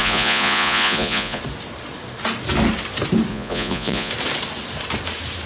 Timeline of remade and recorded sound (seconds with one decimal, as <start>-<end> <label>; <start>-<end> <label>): 0.0-1.4 remade; 1.4-3.3 recorded; 3.3-4.1 remade; 4.1-5.5 recorded